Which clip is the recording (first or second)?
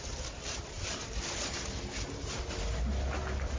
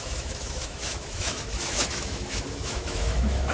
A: first